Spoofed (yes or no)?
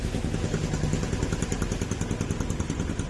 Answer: no